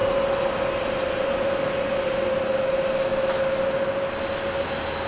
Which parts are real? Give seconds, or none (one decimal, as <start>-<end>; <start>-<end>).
0.0-5.1

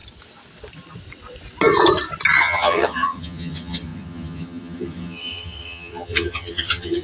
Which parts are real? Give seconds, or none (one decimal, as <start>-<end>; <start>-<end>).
0.0-2.4

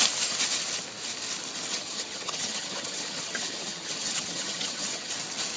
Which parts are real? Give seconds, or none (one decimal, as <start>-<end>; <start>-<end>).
0.0-1.7; 5.1-5.6

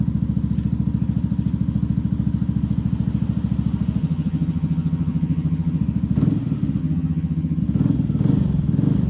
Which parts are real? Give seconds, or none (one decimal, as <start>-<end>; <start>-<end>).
0.0-4.0; 5.8-6.8; 7.6-9.1